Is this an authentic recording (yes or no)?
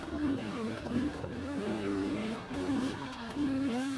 no